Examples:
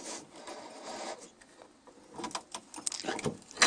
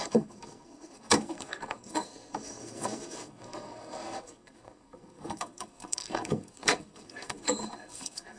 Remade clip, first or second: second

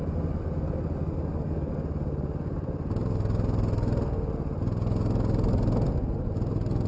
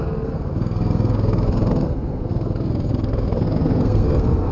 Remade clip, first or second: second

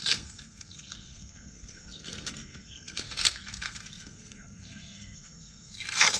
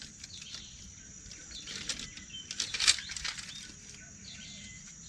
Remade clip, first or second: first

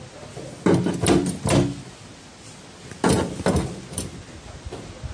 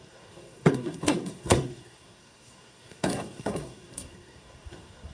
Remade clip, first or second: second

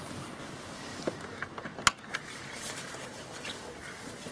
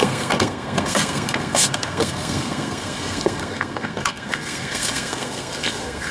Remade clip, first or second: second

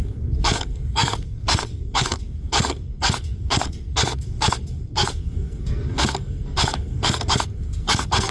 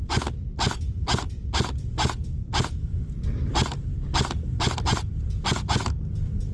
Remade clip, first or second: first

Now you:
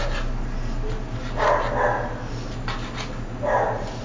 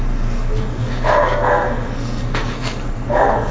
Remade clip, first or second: second